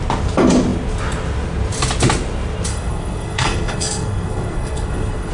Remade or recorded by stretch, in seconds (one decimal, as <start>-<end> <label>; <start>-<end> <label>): 0.0-2.7 recorded; 2.7-5.3 remade